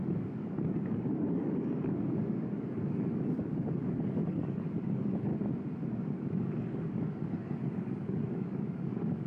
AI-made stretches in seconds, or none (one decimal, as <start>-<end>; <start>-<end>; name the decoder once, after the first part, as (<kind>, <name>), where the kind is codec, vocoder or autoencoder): 0.0-5.3 (codec, DAC); 5.9-9.3